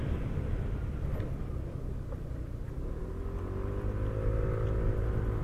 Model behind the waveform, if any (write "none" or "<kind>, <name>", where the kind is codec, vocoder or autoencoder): none